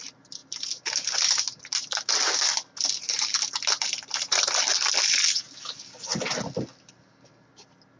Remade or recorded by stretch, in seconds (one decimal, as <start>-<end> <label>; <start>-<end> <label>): 0.0-8.0 recorded